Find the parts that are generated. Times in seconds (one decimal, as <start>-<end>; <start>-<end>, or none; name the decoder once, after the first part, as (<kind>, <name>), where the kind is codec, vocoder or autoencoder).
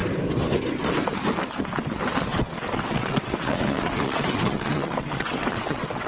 2.3-6.1 (vocoder, WaveNeXt)